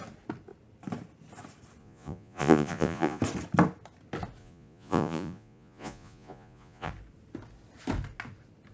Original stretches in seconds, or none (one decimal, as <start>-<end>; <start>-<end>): 0.0-1.8; 3.2-4.4; 6.9-8.7